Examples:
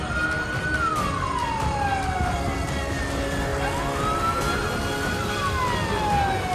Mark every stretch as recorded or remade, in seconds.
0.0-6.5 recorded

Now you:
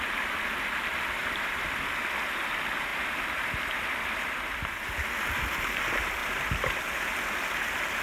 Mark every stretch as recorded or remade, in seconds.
0.0-1.2 recorded; 1.2-1.8 remade; 1.8-6.2 recorded; 6.2-7.0 remade; 7.0-8.0 recorded